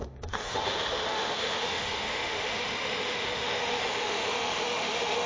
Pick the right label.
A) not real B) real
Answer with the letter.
A